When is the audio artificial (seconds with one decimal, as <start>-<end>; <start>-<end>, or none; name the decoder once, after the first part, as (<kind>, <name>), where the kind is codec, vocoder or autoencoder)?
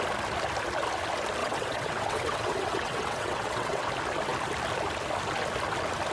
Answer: 1.4-3.9 (vocoder, WaveNeXt)